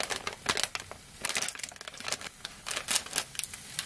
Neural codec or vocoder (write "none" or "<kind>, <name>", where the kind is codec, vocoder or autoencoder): none